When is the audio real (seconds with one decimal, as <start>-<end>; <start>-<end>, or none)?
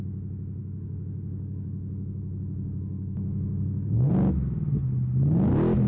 0.0-0.6; 4.1-5.9